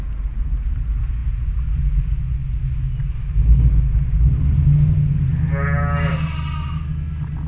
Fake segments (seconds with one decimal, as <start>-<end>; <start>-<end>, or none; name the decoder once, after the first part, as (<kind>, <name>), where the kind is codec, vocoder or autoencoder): none